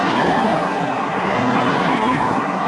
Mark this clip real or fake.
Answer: fake